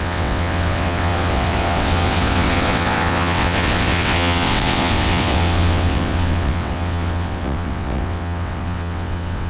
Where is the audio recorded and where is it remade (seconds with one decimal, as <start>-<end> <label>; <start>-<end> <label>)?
0.0-9.5 remade